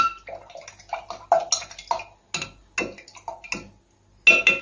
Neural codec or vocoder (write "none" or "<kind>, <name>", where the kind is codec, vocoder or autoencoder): none